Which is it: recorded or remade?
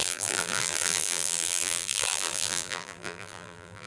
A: remade